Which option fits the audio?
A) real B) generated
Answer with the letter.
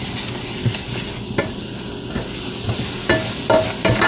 A